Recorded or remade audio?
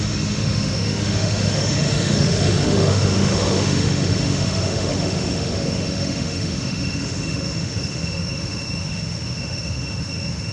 remade